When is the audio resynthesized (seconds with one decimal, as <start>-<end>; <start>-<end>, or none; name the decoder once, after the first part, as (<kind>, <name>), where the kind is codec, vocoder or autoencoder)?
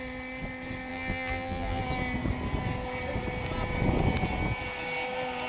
0.9-1.8 (vocoder, BigVGAN v2)